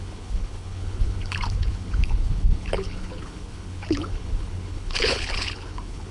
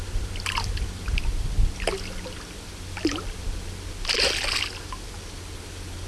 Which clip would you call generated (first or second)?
first